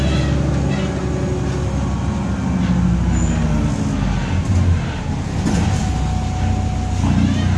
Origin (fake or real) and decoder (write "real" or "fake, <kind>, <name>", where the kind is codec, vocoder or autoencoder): real